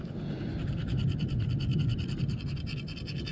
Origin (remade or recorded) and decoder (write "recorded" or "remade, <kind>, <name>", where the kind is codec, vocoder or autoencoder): recorded